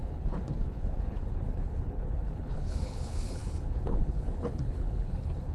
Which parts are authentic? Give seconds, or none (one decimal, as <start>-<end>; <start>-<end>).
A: none